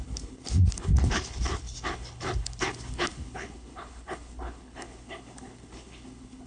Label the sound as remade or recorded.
remade